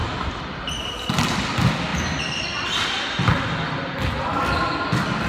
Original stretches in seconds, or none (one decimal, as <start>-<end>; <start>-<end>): 0.0-5.3